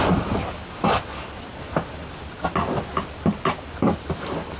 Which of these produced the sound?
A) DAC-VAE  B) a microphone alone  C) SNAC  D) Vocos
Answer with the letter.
B